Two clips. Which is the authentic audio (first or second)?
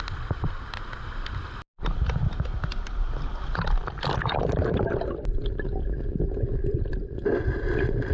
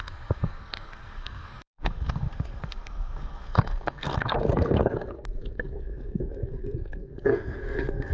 first